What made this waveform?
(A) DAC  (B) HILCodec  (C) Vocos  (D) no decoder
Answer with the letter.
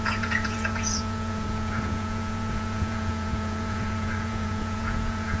C